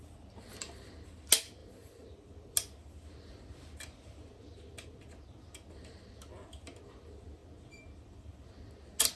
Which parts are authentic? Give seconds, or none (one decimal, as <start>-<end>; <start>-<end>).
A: 0.0-9.2